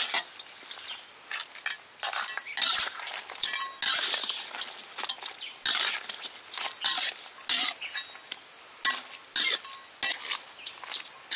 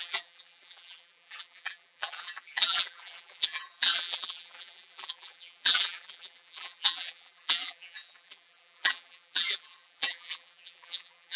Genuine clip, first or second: first